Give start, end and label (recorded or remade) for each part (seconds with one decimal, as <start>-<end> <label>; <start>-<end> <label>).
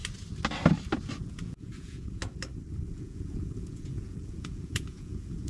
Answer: 0.0-1.2 recorded; 1.2-2.2 remade; 2.2-2.9 recorded; 2.9-5.5 remade